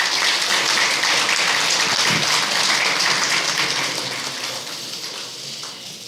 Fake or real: real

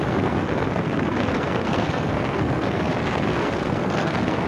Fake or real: fake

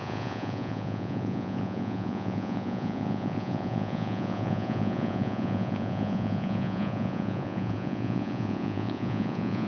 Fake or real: fake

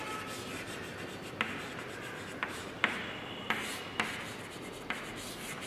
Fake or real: real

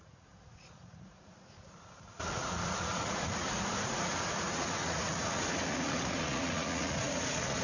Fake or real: fake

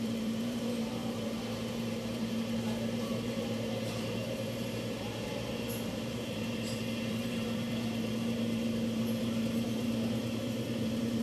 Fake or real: fake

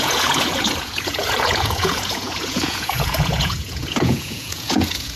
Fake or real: fake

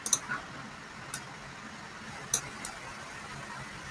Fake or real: real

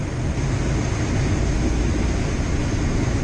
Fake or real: real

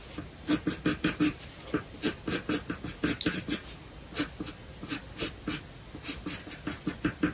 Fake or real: real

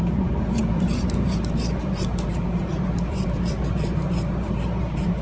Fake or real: fake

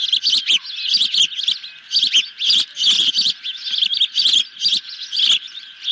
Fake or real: real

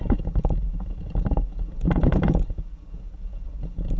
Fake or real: fake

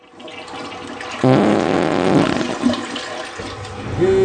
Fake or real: real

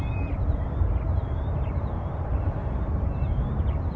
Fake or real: fake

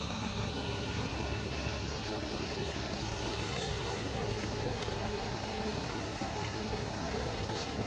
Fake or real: fake